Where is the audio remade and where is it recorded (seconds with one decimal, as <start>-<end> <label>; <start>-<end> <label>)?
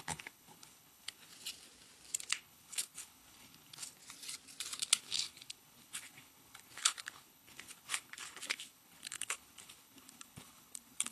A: 0.0-1.3 remade; 1.3-2.3 recorded; 2.3-4.0 remade; 4.0-5.0 recorded; 5.0-11.1 remade